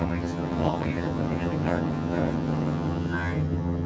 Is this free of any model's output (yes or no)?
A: no